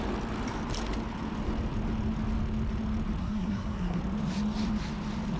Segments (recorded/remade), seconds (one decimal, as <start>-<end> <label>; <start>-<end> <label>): 0.0-3.2 recorded; 3.2-4.0 remade; 4.0-5.4 recorded